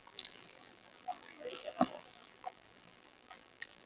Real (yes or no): no